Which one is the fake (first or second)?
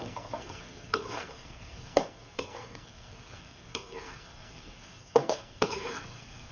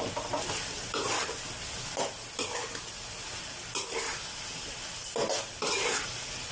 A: first